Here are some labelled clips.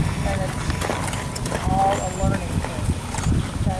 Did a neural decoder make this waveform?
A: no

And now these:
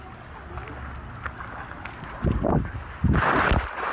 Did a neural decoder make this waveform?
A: no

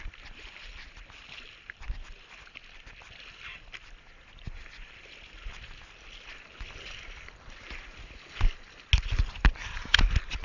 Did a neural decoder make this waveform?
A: no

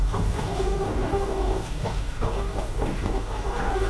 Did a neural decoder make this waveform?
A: yes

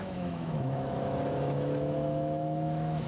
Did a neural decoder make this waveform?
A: yes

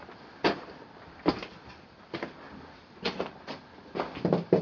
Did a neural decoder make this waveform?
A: no